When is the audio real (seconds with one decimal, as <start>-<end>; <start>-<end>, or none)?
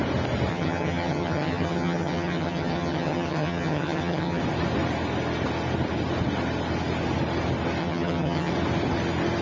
0.0-0.5; 4.4-7.8; 8.5-9.4